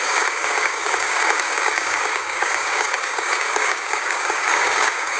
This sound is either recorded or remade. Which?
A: remade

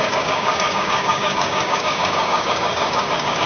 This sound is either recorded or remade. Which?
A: remade